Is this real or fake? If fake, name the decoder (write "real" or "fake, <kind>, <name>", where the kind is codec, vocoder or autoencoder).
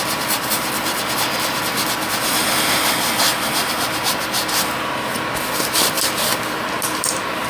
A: fake, vocoder, BigVGAN v2